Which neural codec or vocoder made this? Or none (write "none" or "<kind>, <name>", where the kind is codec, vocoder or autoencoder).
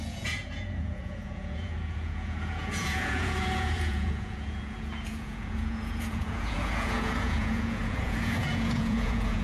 vocoder, Vocos